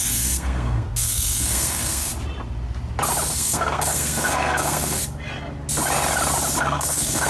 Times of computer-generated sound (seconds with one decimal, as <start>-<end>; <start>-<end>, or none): 0.0-2.1; 3.3-5.0; 6.6-7.3

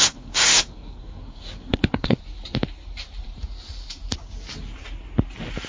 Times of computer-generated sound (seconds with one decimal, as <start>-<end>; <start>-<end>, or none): 0.0-2.2

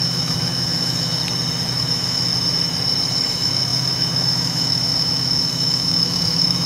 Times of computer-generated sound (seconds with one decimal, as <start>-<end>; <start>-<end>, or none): 0.0-1.2; 1.7-2.3; 3.3-6.7

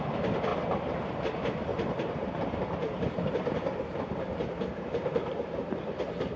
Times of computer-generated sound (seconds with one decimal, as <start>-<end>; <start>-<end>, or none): 0.5-1.2; 1.7-5.5

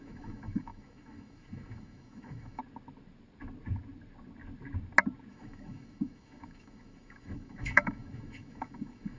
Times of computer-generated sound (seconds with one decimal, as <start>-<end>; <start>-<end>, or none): 0.0-2.6; 5.3-9.2

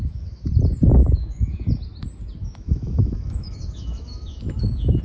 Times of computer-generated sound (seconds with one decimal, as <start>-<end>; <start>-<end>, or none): 0.0-0.5; 1.0-1.7; 2.4-5.0